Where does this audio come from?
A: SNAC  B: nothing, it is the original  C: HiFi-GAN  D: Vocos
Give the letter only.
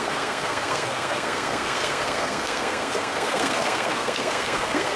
A